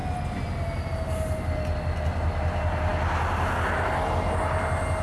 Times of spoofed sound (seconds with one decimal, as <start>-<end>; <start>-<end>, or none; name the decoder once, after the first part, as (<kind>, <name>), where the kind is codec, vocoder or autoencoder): none